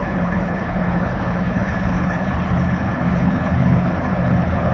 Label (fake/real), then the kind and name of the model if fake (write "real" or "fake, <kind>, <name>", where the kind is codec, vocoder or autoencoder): fake, codec, HILCodec